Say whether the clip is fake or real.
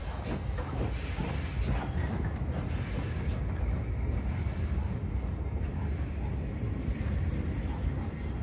real